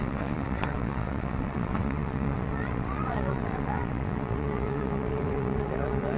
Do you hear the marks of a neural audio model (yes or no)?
yes